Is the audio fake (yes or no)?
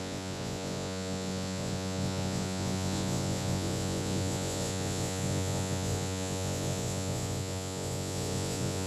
yes